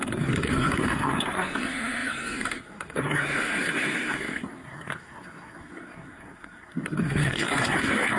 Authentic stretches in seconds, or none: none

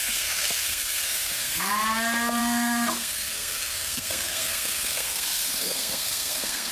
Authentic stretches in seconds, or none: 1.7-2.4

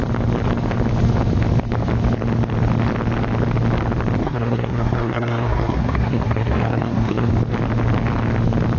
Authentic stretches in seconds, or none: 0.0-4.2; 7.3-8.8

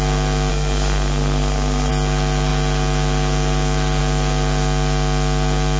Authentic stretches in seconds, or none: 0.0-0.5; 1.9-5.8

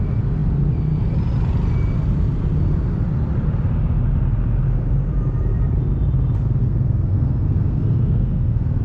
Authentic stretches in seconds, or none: 0.0-6.6

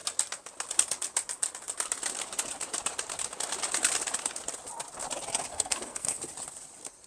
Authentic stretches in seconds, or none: 0.0-5.5; 6.2-7.1

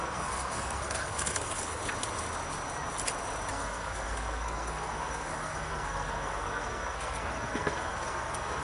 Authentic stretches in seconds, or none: 1.8-3.5

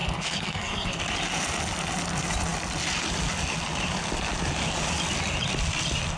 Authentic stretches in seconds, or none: 1.0-6.2